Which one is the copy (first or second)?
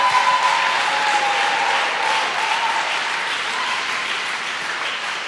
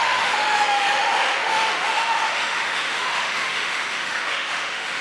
second